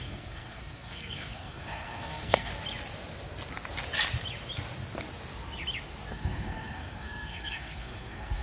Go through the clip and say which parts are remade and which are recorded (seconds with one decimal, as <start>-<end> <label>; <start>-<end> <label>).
0.0-2.5 remade; 2.5-6.1 recorded; 6.1-8.4 remade